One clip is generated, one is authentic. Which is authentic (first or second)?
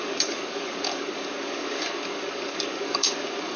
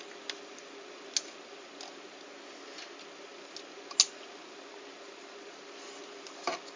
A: second